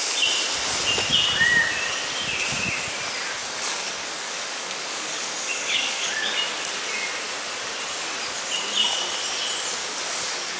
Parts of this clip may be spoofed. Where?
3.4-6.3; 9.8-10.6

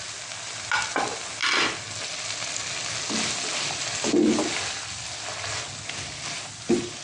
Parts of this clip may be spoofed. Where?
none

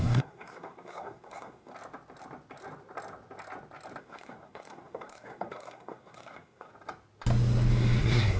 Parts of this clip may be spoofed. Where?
0.0-1.7; 4.0-6.7; 8.0-8.4

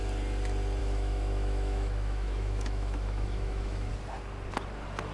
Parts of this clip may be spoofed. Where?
0.8-3.9

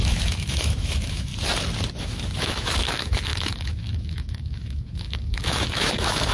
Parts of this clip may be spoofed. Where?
0.0-1.3; 2.0-6.3